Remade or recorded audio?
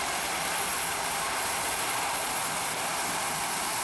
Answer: remade